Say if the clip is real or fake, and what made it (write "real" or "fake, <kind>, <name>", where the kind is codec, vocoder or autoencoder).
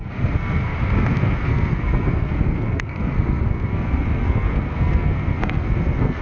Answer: fake, codec, SNAC